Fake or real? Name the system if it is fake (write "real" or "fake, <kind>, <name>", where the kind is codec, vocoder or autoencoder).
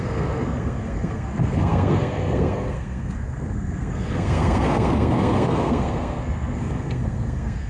fake, codec, SNAC